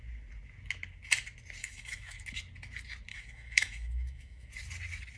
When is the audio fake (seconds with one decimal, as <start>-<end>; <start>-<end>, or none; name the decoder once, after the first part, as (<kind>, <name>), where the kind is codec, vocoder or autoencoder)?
1.6-2.2 (autoencoder, DAC-VAE); 3.1-4.5